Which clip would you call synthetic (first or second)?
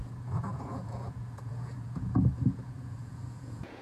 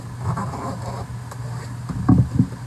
first